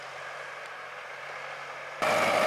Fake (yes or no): no